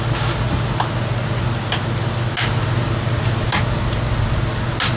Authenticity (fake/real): real